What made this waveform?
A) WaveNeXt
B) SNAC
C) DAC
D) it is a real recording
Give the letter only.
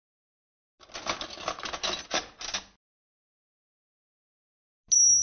D